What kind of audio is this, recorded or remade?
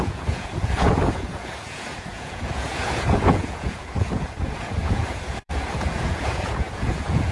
remade